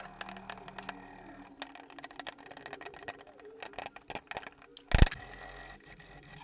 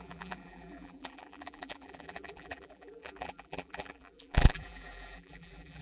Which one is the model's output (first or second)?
second